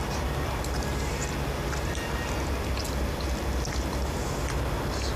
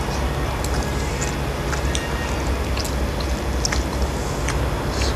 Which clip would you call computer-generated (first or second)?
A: first